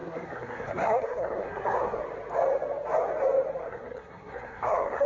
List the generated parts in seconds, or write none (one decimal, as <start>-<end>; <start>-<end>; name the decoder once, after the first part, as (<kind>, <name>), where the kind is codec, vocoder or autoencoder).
0.0-2.0 (codec, SNAC); 3.6-5.1